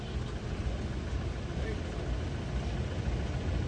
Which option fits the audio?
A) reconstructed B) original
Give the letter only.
B